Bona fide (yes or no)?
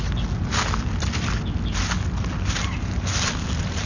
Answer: yes